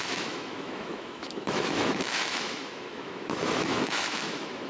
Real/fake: fake